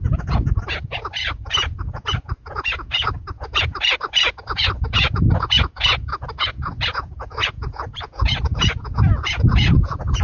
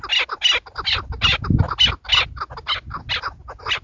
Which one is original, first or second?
second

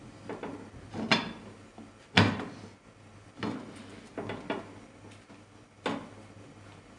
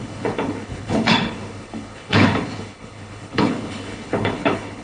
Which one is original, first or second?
first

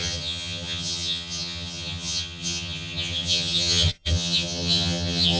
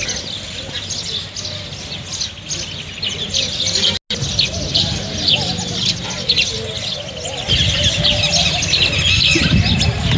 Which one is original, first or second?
second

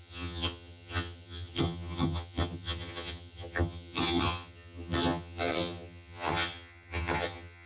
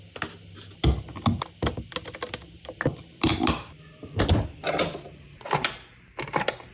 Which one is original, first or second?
second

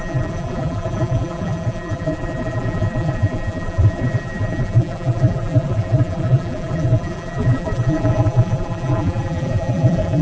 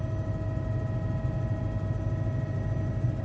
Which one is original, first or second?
second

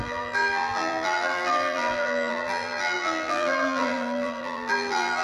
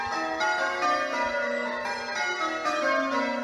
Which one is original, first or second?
second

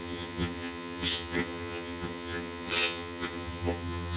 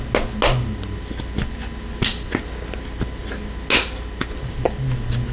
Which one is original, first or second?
second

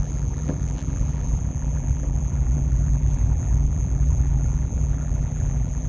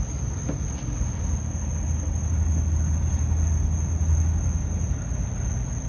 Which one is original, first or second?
second